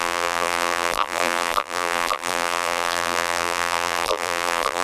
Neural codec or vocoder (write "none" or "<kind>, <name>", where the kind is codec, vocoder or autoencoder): vocoder, BigVGAN v2